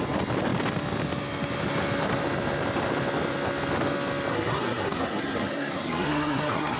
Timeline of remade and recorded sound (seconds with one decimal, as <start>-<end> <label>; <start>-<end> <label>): 0.0-4.3 recorded; 4.3-6.8 remade